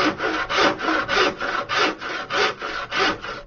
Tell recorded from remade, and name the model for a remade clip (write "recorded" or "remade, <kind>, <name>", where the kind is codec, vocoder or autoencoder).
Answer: recorded